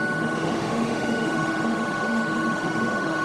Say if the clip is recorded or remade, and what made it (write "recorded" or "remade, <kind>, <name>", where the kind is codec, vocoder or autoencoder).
remade, autoencoder, DAC-VAE